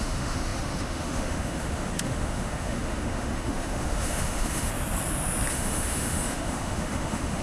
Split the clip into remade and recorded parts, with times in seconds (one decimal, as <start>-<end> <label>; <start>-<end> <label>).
0.0-4.7 remade; 4.7-5.5 recorded; 5.5-7.4 remade